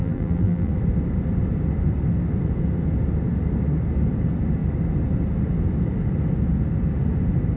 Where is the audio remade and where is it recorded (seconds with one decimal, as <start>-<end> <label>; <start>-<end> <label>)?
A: 0.0-0.7 remade; 0.7-7.6 recorded